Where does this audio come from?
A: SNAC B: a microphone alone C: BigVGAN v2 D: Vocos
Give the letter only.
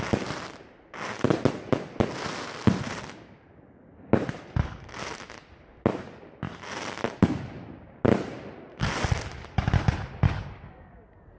B